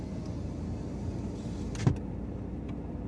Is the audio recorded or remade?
recorded